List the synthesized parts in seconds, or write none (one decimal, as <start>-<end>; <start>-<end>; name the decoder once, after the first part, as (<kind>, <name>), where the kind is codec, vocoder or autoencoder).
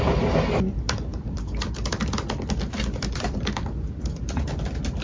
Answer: 1.1-4.1 (vocoder, BigVGAN v2)